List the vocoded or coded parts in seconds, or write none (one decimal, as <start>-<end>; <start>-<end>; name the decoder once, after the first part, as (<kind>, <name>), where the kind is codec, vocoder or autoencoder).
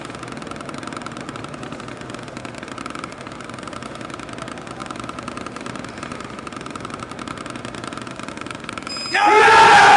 none